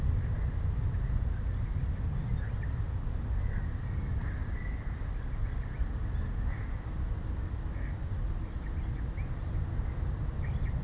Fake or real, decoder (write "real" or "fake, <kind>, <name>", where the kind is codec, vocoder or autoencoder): real